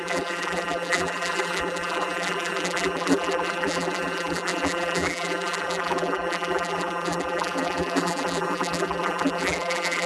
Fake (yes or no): yes